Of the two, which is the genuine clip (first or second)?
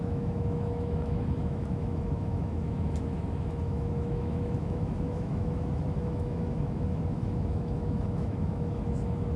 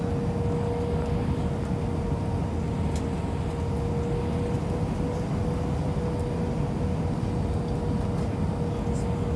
second